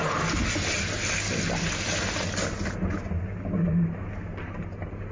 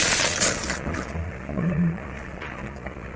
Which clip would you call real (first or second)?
first